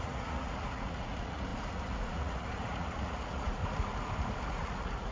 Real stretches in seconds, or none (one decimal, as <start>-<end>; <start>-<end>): 3.6-4.4